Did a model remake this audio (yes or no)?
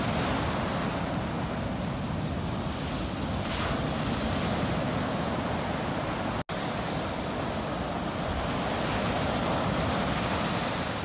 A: no